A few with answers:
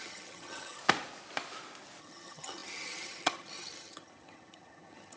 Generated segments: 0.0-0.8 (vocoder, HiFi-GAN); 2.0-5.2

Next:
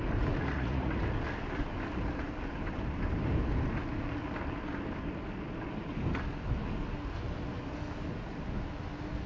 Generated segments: 0.5-1.0 (vocoder, Vocos)